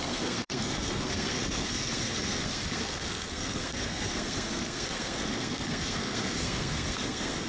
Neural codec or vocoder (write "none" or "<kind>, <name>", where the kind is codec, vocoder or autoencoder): codec, SNAC